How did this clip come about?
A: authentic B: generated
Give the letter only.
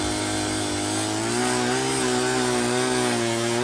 A